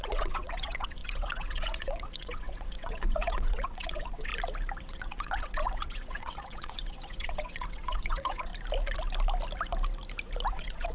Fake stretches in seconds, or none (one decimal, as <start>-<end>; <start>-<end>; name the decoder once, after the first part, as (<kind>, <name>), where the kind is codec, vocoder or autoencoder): 0.0-4.3 (vocoder, WaveNeXt); 4.9-8.5; 10.5-10.9